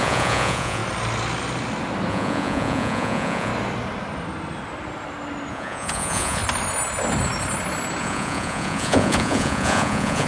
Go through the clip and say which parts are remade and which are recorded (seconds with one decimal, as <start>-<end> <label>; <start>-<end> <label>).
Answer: 0.0-0.8 remade; 0.8-2.1 recorded; 2.1-3.5 remade; 3.5-5.5 recorded; 5.5-6.4 remade; 6.4-8.0 recorded; 8.0-10.3 remade